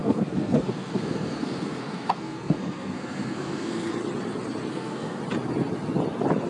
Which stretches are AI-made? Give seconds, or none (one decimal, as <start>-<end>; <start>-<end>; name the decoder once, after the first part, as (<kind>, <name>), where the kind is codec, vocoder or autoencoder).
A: 0.0-3.9 (codec, SNAC); 4.7-5.2